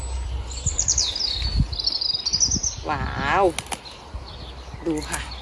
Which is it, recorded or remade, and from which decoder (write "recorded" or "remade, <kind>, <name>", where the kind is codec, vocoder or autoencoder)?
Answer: recorded